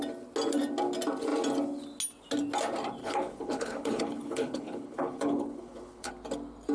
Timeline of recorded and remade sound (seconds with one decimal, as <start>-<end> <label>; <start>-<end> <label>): 0.0-3.0 recorded; 3.0-6.1 remade; 6.1-6.7 recorded